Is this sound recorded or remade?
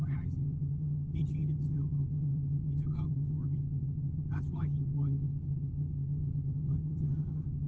remade